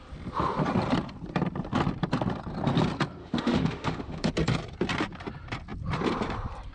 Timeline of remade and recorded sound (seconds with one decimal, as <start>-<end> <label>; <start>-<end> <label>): 0.0-3.2 recorded; 3.2-4.3 remade; 4.3-6.7 recorded